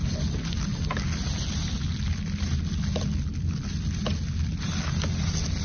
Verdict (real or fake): real